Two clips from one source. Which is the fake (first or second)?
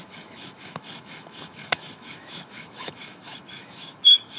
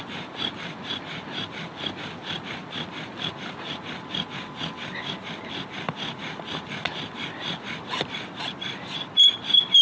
first